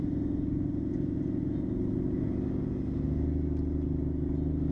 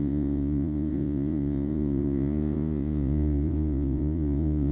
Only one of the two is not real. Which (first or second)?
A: second